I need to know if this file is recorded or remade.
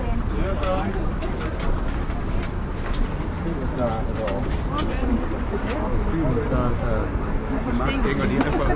recorded